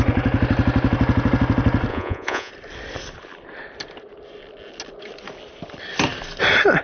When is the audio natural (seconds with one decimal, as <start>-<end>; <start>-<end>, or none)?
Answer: 0.0-1.9; 2.5-6.8